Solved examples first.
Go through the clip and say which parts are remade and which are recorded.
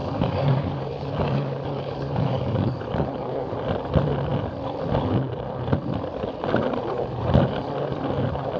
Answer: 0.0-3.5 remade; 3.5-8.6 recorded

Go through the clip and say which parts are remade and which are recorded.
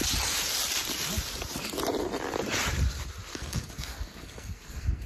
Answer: 0.0-3.3 recorded; 3.3-5.1 remade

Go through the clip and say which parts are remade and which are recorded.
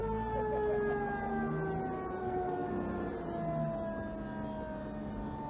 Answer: 0.0-2.2 recorded; 2.2-2.7 remade; 2.7-5.5 recorded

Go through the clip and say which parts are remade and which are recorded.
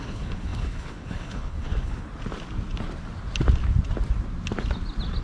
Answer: 0.0-2.1 remade; 2.1-5.2 recorded